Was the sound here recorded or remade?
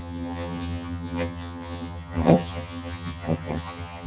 remade